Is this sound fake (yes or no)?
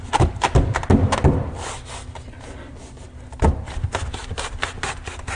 no